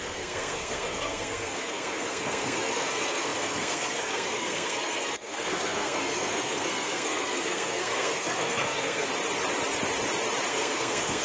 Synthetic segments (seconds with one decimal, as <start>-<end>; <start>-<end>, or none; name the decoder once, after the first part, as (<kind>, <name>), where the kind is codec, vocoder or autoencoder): 0.0-9.1 (codec, SNAC); 10.5-11.2